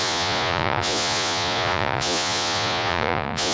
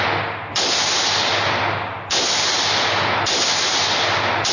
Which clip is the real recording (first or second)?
second